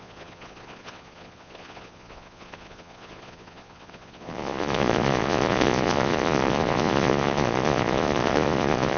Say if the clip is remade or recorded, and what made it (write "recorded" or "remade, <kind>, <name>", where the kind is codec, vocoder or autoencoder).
remade, vocoder, Vocos